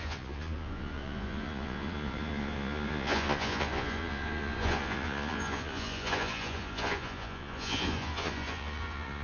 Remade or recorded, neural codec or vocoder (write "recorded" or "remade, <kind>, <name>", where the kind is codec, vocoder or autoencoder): remade, vocoder, Vocos